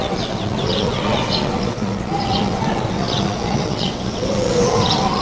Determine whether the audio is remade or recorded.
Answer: remade